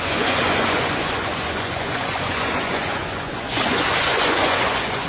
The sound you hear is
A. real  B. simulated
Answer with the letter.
B